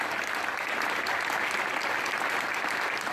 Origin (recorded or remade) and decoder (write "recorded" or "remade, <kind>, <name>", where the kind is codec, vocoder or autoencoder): recorded